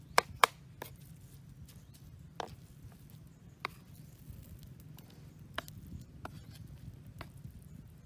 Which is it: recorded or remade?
recorded